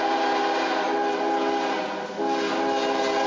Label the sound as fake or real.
real